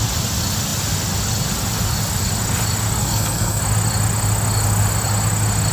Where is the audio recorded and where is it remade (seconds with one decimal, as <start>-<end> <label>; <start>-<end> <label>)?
0.0-3.0 recorded; 3.0-3.6 remade; 3.6-5.7 recorded